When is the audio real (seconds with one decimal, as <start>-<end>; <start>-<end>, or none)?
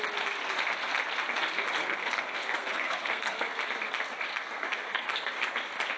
0.0-1.8; 3.6-4.3; 5.3-6.0